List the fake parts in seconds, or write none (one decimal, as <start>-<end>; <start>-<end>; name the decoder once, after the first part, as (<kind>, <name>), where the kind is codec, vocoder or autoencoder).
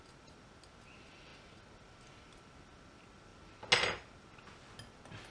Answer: none